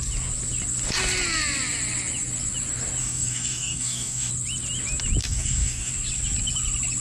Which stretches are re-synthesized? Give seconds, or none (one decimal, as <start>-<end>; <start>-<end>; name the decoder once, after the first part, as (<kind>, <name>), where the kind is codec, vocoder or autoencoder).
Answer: 3.0-4.3 (codec, DAC); 5.2-5.9